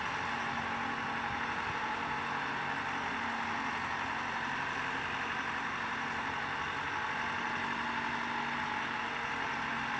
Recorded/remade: recorded